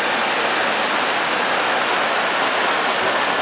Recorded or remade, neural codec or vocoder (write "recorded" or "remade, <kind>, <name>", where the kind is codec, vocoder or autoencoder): recorded